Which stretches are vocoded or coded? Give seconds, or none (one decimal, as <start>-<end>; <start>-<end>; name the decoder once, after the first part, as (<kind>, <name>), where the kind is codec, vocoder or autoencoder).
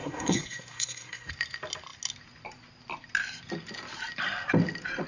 0.0-1.3 (codec, SNAC)